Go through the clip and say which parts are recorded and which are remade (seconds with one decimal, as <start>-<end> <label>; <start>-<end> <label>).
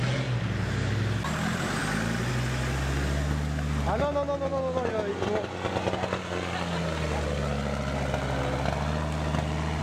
0.0-9.8 recorded